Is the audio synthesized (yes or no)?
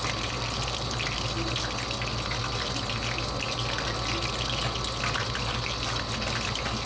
no